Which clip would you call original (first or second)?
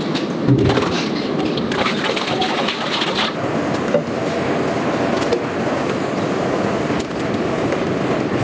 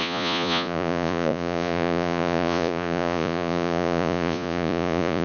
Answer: first